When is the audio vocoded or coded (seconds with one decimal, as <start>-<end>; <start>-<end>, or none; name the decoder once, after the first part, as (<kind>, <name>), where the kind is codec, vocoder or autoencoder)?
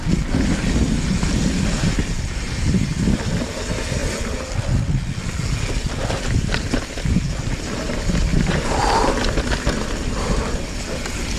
8.3-9.1 (vocoder, BigVGAN v2)